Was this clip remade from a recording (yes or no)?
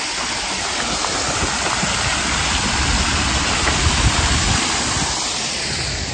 no